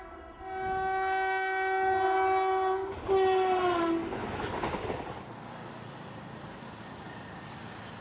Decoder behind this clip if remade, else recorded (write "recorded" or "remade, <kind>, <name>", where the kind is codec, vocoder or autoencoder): recorded